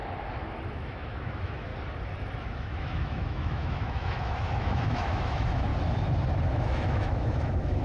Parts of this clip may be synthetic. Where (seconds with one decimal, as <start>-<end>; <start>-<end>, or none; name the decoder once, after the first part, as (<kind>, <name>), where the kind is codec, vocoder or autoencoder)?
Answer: 0.7-1.7 (autoencoder, DAC-VAE); 2.4-5.7; 6.5-7.8